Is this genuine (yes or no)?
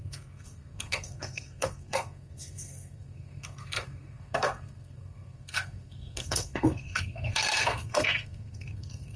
no